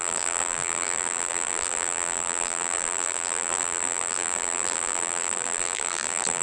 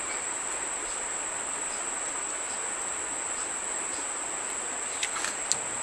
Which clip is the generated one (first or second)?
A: first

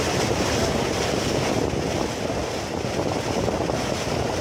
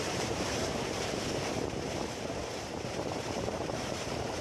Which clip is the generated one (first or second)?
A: second